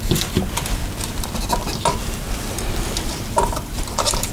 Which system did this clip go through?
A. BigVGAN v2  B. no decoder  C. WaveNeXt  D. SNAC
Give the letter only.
B